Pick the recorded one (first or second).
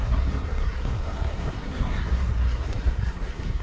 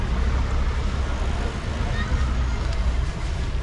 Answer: second